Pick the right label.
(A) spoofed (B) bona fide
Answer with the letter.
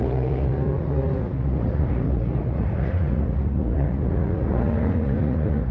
A